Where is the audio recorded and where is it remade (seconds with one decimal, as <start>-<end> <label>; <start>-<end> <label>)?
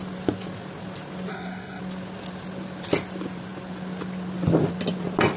0.0-1.3 recorded; 1.3-1.8 remade; 1.8-5.4 recorded